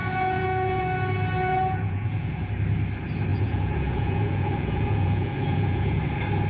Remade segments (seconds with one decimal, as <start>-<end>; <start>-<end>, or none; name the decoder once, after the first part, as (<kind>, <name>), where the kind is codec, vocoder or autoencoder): 0.0-0.8 (vocoder, Vocos); 1.5-2.5; 3.3-6.0